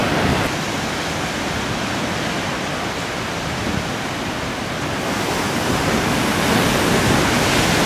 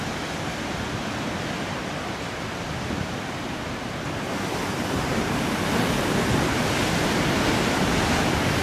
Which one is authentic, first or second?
first